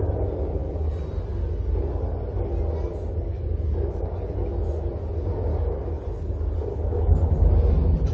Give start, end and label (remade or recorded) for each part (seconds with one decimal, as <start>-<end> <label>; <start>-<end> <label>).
0.0-3.3 recorded; 3.3-4.9 remade; 4.9-5.5 recorded; 5.5-6.3 remade; 6.3-6.7 recorded; 6.7-7.3 remade; 7.3-8.1 recorded